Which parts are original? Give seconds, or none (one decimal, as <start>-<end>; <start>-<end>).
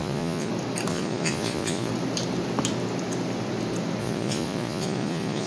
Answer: 0.5-0.9; 1.9-4.0